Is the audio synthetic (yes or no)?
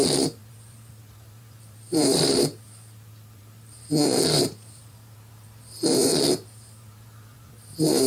yes